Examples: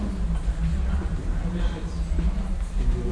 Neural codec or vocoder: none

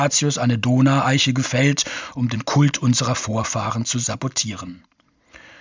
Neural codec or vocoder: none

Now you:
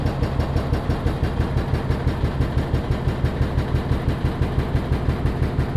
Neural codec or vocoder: none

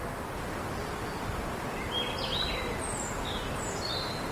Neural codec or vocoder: none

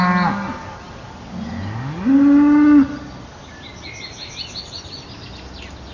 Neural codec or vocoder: none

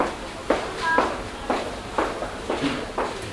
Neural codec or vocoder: none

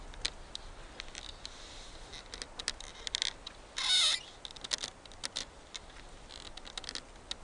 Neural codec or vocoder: none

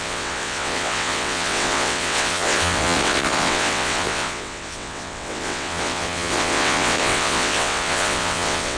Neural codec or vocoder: vocoder, WaveNeXt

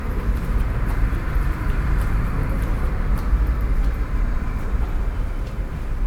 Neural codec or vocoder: vocoder, BigVGAN v2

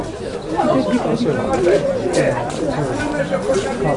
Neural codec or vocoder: none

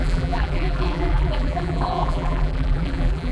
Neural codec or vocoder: vocoder, BigVGAN v2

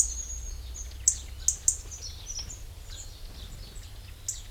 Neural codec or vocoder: none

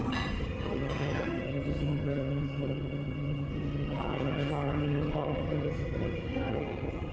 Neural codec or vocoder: vocoder, HiFi-GAN